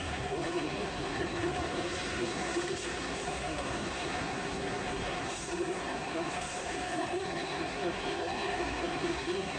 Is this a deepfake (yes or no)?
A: yes